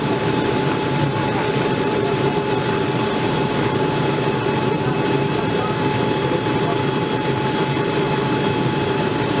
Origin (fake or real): fake